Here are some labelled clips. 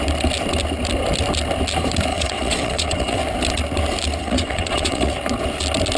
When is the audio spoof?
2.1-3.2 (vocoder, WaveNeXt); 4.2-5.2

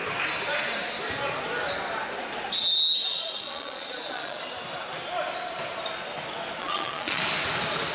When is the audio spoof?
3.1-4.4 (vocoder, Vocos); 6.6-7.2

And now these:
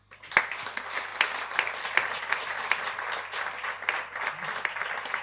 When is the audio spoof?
none

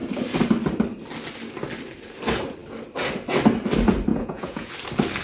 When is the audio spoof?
4.1-4.7 (vocoder, Vocos)

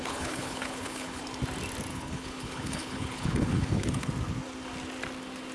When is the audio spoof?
0.0-1.2 (codec, HILCodec); 1.9-4.1

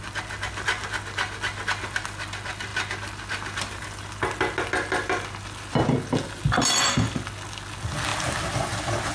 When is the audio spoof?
none

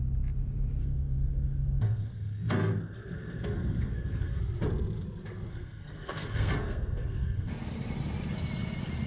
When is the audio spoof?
0.8-4.4 (codec, SNAC); 5.5-7.5